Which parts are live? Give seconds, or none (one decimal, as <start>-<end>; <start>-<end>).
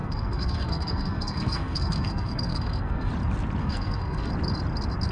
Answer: 3.1-3.6; 4.3-5.1